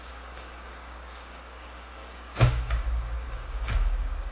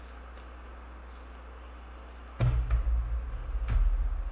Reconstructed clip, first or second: first